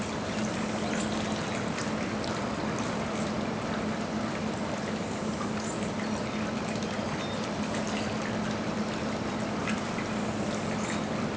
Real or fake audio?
real